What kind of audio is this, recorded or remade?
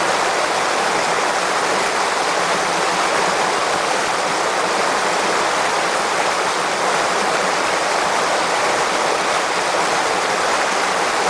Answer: recorded